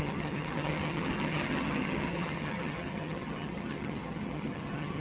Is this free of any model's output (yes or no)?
no